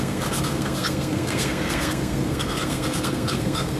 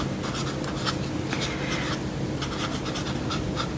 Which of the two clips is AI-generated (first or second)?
first